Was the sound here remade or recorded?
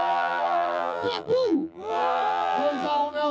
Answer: remade